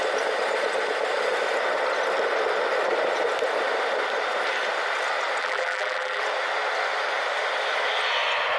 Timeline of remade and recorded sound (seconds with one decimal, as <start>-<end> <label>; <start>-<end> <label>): 0.0-5.4 recorded; 5.4-6.2 remade; 6.2-8.6 recorded

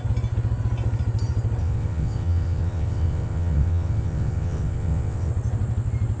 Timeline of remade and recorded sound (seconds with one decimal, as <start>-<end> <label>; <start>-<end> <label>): 0.0-1.6 recorded; 1.6-5.3 remade; 5.3-6.2 recorded